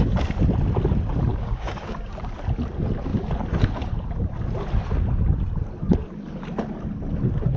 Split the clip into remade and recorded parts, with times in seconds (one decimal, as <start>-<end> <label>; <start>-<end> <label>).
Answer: 0.0-1.3 recorded; 1.3-2.2 remade; 2.2-7.6 recorded